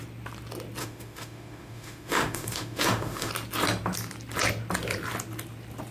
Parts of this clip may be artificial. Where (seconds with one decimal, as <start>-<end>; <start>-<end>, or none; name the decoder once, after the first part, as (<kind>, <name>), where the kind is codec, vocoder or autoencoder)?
0.8-3.3 (autoencoder, DAC-VAE)